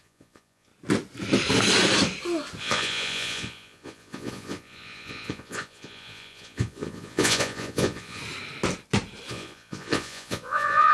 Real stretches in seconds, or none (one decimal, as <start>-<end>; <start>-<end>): 0.7-2.6; 8.2-9.3